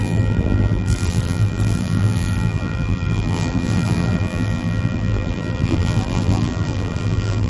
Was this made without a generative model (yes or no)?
no